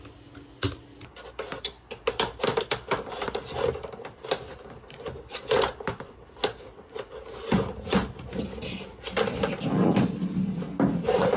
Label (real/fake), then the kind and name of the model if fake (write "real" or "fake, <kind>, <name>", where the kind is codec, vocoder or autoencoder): real